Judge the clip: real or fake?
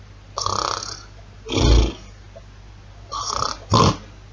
real